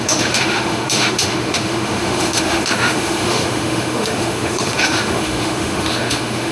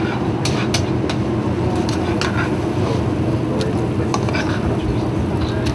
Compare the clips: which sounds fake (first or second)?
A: first